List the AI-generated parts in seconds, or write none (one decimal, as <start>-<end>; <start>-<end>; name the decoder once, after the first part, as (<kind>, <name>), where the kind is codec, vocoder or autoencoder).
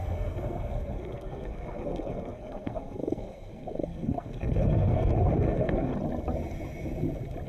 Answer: 0.0-5.9 (codec, SNAC)